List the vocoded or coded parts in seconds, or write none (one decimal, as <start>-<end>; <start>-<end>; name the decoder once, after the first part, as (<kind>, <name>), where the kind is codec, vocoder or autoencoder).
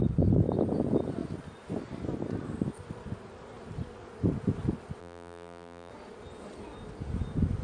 5.0-5.9 (vocoder, BigVGAN v2)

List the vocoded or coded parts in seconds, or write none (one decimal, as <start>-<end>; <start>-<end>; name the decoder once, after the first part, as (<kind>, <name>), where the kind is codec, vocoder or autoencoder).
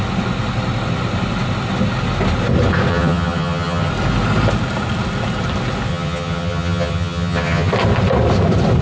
2.9-3.9 (vocoder, HiFi-GAN); 5.9-7.7